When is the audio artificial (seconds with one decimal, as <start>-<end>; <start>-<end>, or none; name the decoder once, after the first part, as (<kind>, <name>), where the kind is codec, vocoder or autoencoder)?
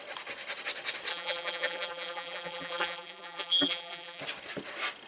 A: 1.1-4.2 (vocoder, BigVGAN v2)